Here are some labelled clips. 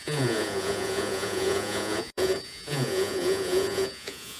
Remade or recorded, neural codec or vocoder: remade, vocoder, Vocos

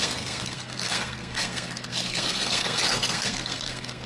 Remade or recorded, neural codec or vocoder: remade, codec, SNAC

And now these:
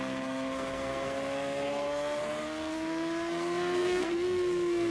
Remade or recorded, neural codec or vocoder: remade, codec, SNAC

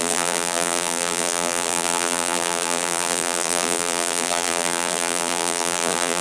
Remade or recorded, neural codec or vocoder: remade, vocoder, BigVGAN v2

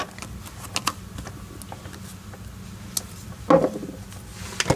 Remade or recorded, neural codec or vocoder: recorded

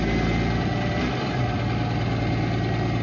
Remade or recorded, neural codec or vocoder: recorded